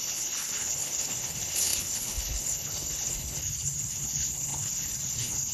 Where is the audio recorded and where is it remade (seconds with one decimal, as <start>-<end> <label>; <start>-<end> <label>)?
0.0-5.5 remade